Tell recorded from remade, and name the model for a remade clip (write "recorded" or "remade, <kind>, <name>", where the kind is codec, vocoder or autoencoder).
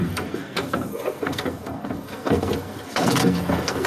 remade, codec, SNAC